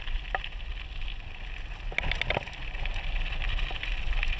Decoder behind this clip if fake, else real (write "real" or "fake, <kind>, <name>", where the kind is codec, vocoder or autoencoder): real